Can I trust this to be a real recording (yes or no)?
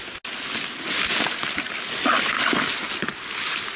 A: yes